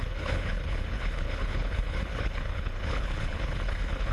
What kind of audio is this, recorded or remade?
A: remade